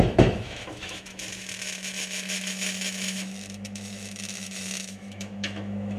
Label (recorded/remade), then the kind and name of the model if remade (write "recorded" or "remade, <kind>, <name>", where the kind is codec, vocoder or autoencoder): remade, autoencoder, DAC-VAE